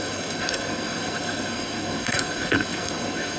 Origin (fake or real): fake